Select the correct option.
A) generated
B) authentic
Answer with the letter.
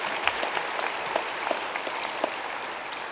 B